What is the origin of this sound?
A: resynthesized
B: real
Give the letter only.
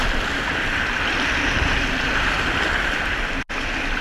B